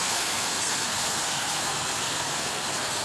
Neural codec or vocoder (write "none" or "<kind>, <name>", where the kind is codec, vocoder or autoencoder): codec, SNAC